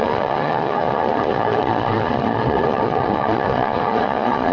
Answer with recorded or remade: remade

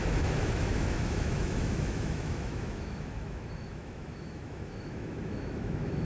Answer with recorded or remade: remade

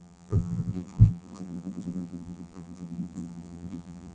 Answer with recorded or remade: remade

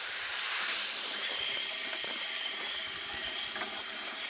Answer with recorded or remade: remade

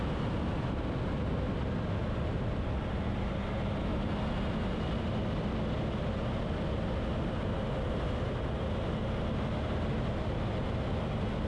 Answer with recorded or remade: recorded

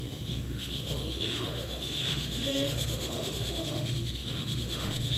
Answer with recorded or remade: remade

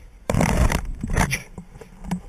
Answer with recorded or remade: remade